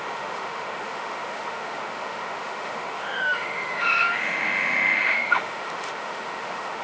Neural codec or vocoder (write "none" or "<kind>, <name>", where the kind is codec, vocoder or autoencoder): autoencoder, DAC-VAE